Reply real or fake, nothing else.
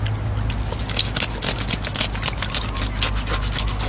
real